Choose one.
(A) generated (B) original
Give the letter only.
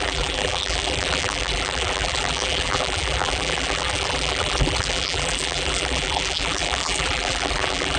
A